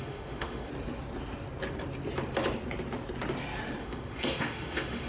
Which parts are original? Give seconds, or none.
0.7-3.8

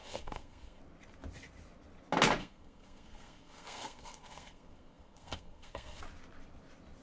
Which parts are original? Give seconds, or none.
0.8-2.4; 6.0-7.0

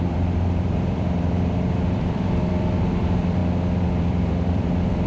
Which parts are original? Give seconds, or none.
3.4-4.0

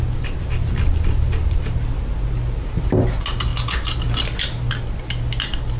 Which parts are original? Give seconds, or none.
0.0-5.8

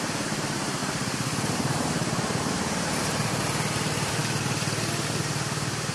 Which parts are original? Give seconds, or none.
none

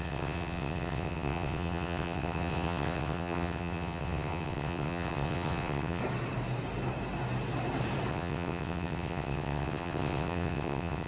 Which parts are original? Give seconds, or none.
6.0-8.1